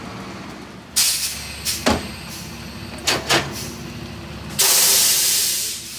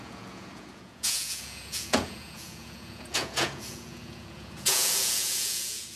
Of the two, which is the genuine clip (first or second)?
first